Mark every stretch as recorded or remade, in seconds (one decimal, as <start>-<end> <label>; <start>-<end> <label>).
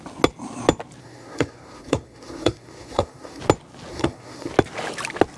0.0-1.0 recorded; 1.0-3.4 remade; 3.4-3.9 recorded; 3.9-4.5 remade; 4.5-5.4 recorded